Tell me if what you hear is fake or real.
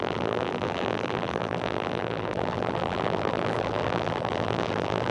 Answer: fake